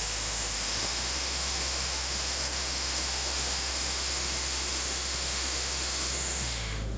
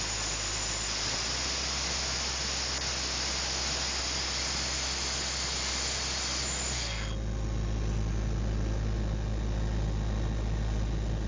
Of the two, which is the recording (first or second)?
second